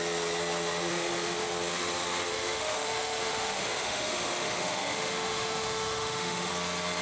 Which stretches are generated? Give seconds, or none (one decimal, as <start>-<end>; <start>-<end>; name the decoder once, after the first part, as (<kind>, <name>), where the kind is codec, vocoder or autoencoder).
0.9-1.5 (autoencoder, DAC-VAE); 2.3-6.5